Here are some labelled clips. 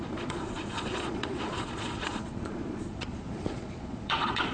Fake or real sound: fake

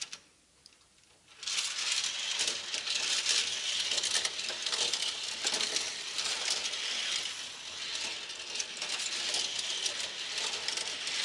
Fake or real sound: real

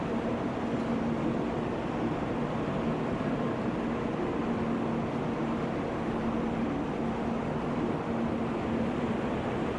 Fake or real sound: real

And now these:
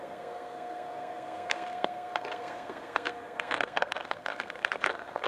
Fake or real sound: fake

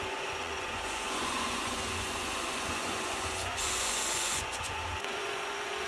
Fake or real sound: fake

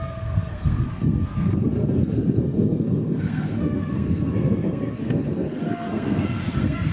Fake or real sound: fake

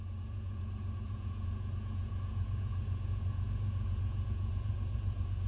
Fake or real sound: fake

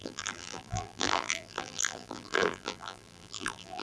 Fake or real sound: fake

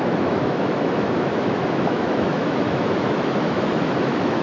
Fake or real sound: fake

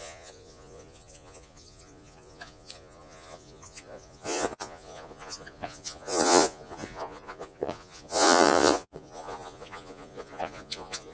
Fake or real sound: fake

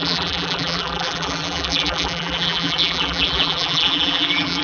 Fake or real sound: fake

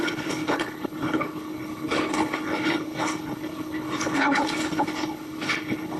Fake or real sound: fake